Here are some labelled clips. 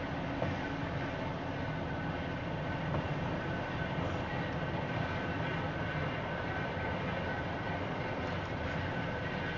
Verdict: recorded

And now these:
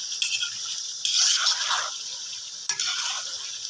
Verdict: recorded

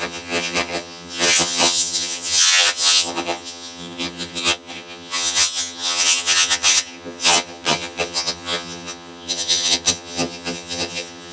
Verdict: remade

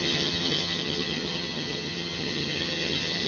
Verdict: remade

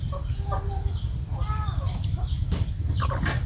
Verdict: recorded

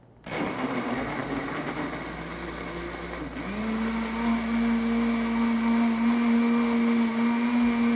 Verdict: recorded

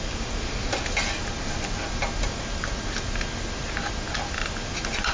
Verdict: recorded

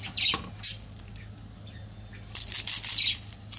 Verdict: recorded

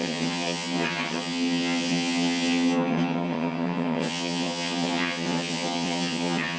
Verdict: remade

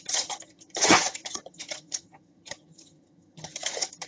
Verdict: remade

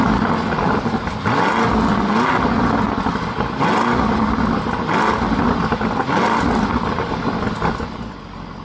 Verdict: recorded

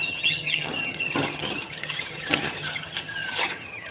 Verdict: remade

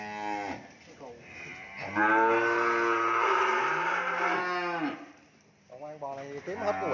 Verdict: recorded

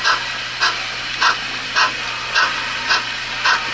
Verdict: recorded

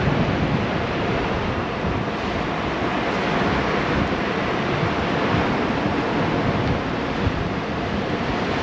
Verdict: recorded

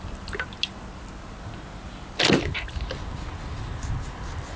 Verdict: recorded